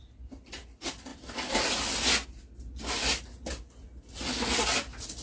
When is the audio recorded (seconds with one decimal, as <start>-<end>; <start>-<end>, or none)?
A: 0.0-5.2